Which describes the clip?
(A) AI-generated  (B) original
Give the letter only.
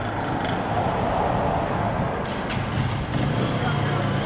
B